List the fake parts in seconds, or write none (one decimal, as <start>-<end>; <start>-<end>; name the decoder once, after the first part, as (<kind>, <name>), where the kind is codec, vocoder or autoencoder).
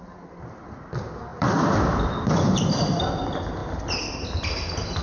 1.3-3.1 (vocoder, BigVGAN v2)